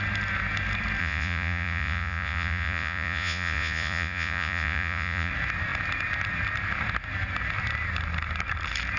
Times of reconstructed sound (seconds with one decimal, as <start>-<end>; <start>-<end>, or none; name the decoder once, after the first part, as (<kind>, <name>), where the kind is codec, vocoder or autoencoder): 1.0-5.3 (vocoder, Vocos)